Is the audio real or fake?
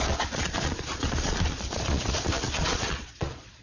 fake